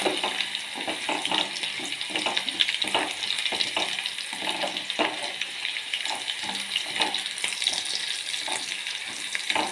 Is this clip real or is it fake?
real